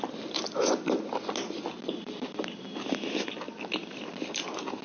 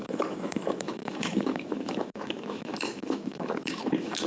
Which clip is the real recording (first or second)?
first